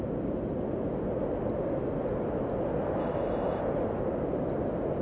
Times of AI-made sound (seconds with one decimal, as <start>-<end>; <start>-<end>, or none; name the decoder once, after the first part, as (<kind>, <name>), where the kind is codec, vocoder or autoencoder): 3.0-3.6 (codec, DAC)